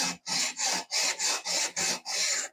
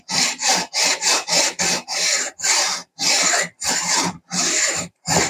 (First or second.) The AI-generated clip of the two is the second